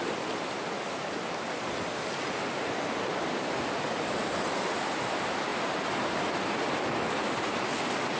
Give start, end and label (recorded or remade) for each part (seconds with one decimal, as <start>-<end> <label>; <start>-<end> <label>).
0.0-8.2 recorded